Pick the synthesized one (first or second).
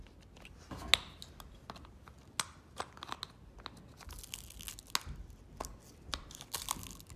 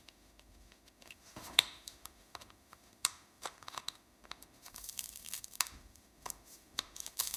second